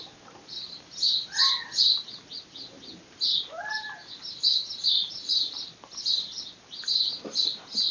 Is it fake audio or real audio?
real